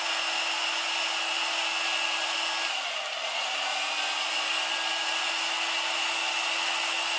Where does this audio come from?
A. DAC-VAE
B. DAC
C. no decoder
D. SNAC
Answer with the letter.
C